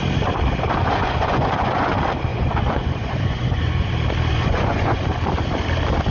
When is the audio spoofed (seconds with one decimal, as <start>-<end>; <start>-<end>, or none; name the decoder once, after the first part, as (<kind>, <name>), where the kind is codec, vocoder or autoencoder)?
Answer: 0.8-1.9 (vocoder, Vocos); 2.3-3.9; 4.3-5.0